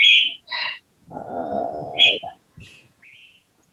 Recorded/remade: remade